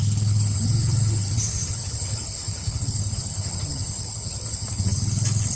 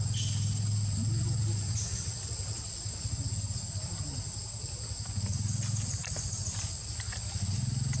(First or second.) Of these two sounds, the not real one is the first